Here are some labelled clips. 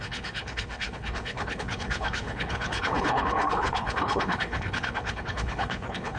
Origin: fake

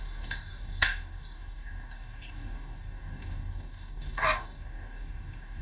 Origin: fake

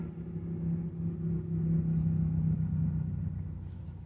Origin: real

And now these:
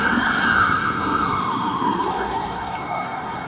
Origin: fake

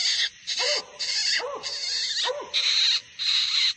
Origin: real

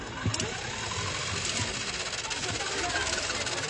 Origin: real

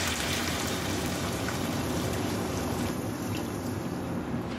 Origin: fake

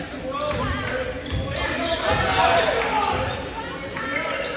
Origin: real